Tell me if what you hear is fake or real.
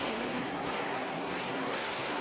fake